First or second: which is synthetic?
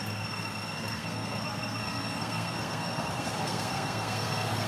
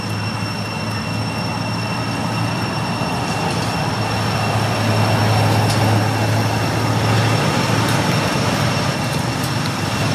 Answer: first